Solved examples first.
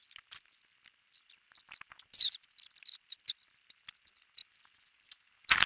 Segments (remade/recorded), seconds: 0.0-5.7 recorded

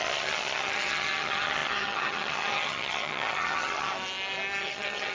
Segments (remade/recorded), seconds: 0.0-3.9 remade; 3.9-4.6 recorded; 4.6-5.1 remade

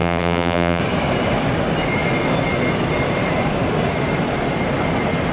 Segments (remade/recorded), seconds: 0.0-0.8 remade; 0.8-5.3 recorded

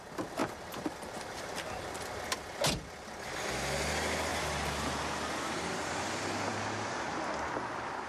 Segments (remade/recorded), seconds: 0.0-4.3 recorded; 4.3-4.9 remade; 4.9-8.1 recorded

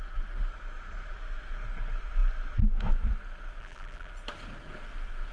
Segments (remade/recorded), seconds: 0.0-3.6 recorded; 3.6-4.1 remade; 4.1-5.3 recorded

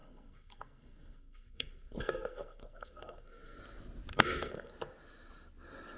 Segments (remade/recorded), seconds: 0.0-3.6 remade; 3.6-4.1 recorded; 4.1-4.7 remade; 4.7-6.0 recorded

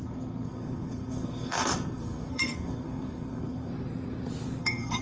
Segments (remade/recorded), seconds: 0.0-3.7 remade; 3.7-4.6 recorded; 4.6-5.0 remade

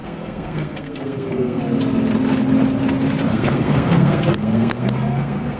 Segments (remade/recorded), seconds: 0.0-1.6 remade; 1.6-3.3 recorded; 3.3-5.6 remade